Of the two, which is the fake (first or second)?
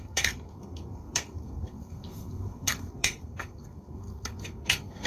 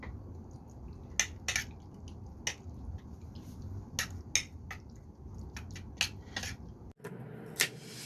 first